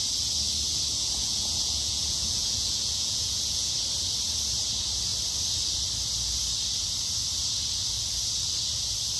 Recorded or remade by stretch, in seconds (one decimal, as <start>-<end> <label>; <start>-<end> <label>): 0.0-1.2 recorded; 1.2-3.7 remade; 3.7-9.2 recorded